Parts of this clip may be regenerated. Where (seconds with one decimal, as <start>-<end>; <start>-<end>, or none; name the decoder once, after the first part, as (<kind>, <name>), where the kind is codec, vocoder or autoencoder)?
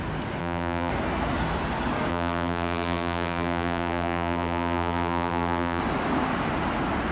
0.4-0.9 (vocoder, BigVGAN v2); 2.1-5.8